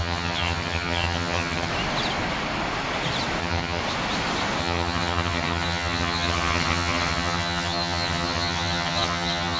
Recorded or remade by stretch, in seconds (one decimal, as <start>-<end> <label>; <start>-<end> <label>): 0.0-1.7 remade; 1.7-3.4 recorded; 3.4-3.8 remade; 3.8-4.6 recorded; 4.6-9.6 remade